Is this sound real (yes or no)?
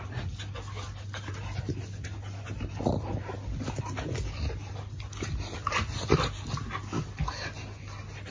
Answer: yes